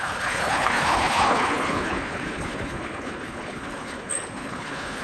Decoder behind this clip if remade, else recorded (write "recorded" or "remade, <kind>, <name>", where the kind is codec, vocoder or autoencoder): remade, codec, HILCodec